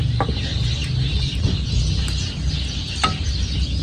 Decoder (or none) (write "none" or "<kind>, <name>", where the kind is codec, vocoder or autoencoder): none